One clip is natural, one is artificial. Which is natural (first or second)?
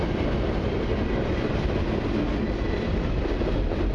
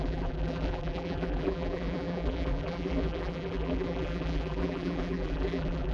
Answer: first